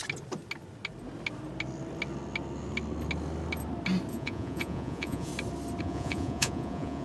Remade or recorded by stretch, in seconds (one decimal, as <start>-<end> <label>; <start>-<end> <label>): 0.0-4.1 recorded; 4.1-5.3 remade; 5.3-5.8 recorded; 5.8-7.0 remade